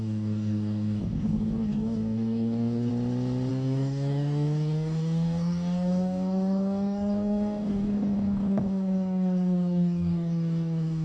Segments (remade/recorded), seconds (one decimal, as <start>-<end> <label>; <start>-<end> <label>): 0.0-2.9 remade; 2.9-3.5 recorded; 3.5-11.0 remade